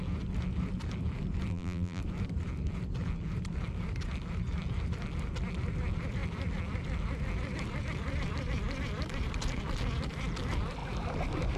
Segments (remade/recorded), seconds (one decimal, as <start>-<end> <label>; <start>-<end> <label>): 0.0-1.5 recorded; 1.5-2.0 remade; 2.0-11.6 recorded